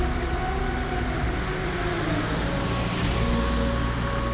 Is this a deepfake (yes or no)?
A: no